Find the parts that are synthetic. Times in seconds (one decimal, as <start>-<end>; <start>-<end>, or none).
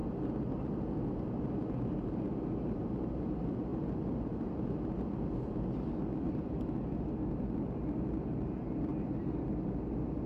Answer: 8.9-9.4